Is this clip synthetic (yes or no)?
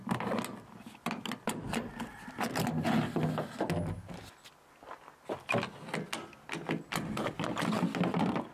no